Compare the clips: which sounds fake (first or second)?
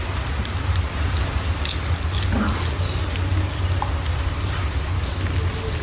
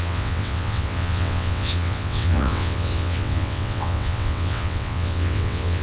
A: second